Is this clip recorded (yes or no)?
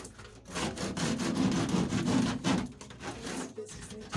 yes